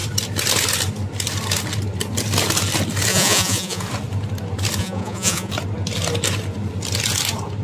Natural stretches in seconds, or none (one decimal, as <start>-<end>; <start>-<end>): 0.0-3.1; 3.8-4.8; 5.5-7.6